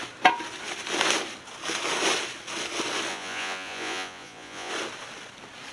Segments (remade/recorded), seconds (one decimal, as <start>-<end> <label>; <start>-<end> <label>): 0.0-3.1 recorded; 3.1-4.7 remade; 4.7-5.7 recorded